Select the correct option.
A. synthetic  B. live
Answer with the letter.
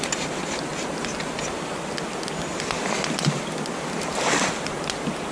B